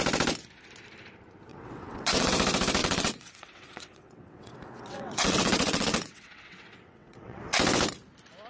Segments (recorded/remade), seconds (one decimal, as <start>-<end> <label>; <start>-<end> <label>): 0.0-1.5 recorded; 1.5-2.3 remade; 2.3-2.8 recorded; 2.8-7.4 remade; 7.4-8.5 recorded